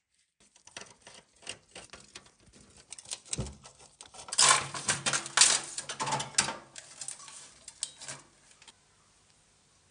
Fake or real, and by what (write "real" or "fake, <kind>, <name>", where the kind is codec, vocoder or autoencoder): real